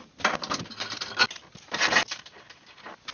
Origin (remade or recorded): recorded